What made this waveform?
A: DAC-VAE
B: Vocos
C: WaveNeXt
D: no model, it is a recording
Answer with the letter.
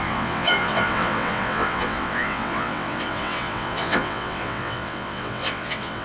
C